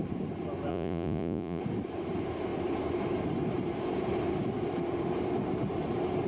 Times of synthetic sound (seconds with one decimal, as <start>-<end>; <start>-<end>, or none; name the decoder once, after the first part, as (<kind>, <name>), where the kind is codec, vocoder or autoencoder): 0.7-1.6 (vocoder, Vocos)